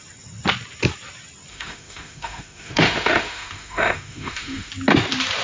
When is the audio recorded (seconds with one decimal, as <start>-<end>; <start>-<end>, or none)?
0.0-1.5; 4.7-5.4